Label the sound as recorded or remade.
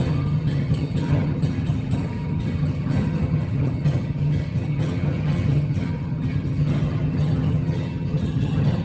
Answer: remade